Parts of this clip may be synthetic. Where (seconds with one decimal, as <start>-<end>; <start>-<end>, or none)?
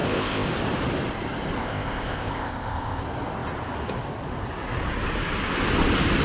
0.0-0.5; 1.6-3.0